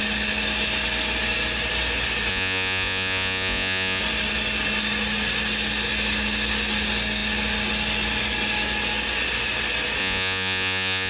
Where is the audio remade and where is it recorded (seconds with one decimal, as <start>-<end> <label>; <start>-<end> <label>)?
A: 0.0-2.3 recorded; 2.3-4.0 remade; 4.0-10.0 recorded; 10.0-11.1 remade